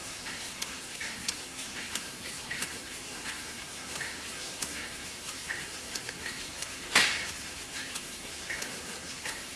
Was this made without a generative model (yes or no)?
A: no